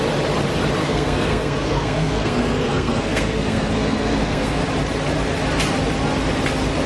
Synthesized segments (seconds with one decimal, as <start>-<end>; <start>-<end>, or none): 0.8-4.6